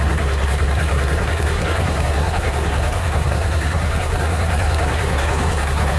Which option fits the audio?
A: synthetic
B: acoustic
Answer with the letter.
A